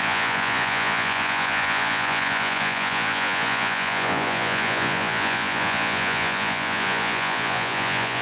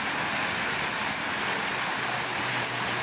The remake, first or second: first